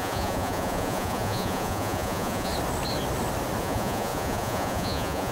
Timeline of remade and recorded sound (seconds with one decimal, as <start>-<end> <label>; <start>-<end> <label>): 0.0-2.5 remade; 2.5-3.6 recorded; 3.6-5.3 remade